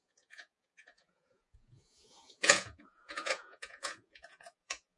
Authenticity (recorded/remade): remade